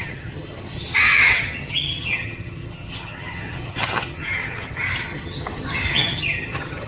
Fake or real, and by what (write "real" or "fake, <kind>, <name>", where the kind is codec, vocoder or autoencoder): fake, vocoder, HiFi-GAN